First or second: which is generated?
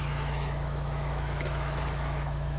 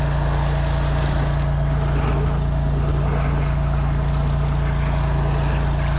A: first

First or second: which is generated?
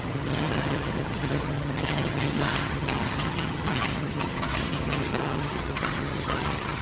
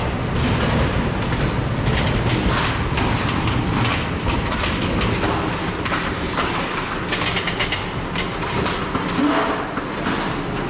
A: first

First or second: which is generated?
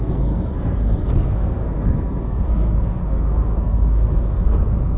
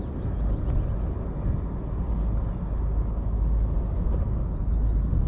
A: first